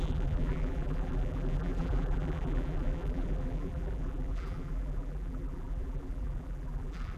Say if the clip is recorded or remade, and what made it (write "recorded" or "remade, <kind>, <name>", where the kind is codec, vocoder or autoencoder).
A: remade, vocoder, BigVGAN v2